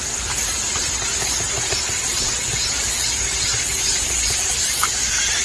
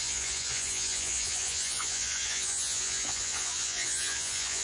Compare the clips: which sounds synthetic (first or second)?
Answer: second